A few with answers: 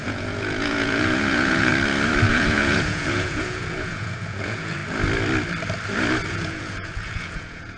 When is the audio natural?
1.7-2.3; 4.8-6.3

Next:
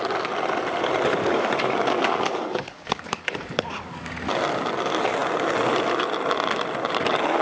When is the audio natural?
0.0-1.2; 4.1-7.4

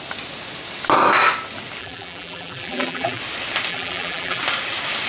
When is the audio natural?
0.0-1.8; 3.2-3.7; 4.4-5.1

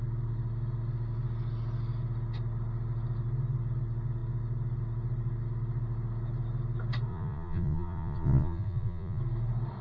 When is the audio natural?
0.0-7.1; 9.2-9.8

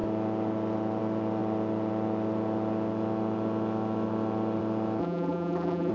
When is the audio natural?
0.0-5.0

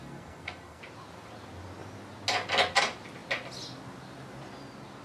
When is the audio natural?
0.8-5.0